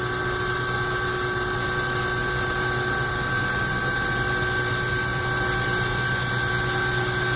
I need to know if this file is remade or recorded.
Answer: recorded